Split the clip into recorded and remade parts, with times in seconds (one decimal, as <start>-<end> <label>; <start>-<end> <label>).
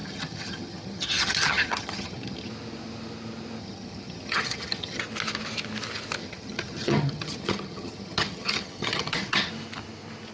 0.0-2.5 remade; 2.5-3.6 recorded; 3.6-5.0 remade; 5.0-6.2 recorded; 6.2-9.5 remade; 9.5-10.3 recorded